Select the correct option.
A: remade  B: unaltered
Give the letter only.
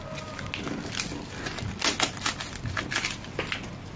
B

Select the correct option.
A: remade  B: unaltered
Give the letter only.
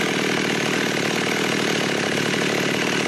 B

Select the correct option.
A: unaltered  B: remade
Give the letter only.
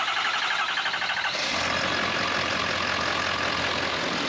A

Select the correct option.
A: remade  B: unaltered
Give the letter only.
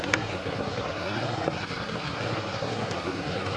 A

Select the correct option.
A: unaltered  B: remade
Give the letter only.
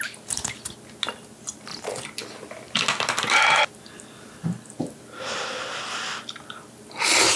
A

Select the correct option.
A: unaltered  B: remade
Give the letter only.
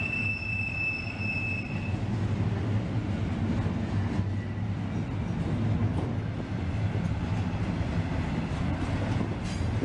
A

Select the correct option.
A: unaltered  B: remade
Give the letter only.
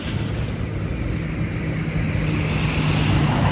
A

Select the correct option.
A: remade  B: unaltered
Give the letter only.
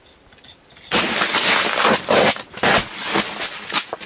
B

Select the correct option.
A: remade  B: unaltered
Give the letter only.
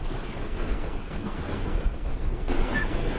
A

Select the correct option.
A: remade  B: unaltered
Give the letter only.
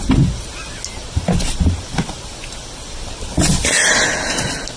B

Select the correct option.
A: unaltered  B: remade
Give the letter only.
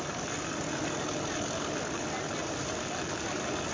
A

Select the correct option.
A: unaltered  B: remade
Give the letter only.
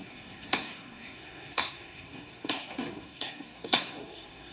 B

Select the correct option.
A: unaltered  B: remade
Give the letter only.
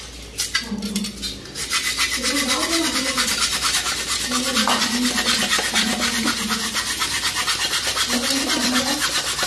A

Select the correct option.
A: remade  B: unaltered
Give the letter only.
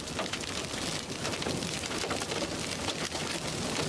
B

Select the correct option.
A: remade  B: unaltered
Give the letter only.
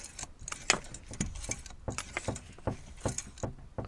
B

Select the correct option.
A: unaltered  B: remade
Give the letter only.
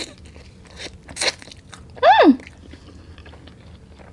A